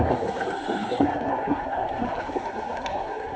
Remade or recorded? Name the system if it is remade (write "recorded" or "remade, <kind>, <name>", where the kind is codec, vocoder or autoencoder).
remade, codec, SNAC